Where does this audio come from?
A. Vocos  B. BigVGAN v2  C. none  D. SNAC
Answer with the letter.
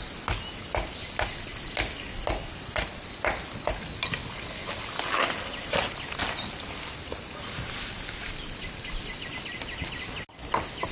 C